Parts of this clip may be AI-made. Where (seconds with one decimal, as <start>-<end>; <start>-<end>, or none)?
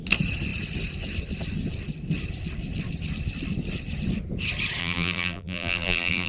4.8-6.3